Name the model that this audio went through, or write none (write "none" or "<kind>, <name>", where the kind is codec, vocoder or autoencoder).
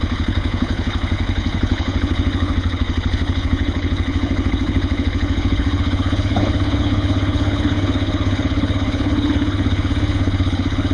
codec, HILCodec